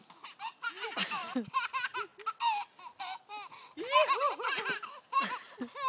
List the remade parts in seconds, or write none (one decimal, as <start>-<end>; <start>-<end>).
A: none